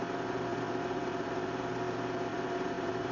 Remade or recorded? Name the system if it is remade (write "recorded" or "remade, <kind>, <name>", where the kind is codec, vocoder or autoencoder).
remade, vocoder, BigVGAN v2